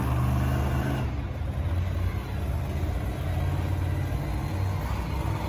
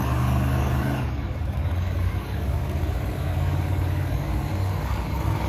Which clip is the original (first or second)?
first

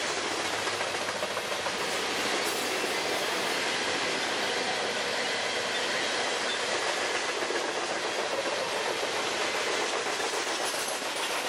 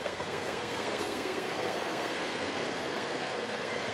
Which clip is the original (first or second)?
first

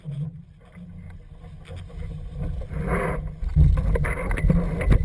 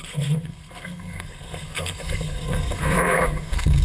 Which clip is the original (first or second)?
first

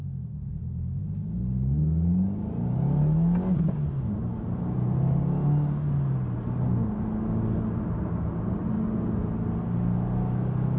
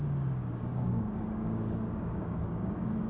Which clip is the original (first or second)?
first